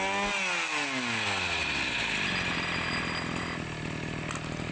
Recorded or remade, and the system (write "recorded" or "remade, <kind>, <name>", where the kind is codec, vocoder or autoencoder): recorded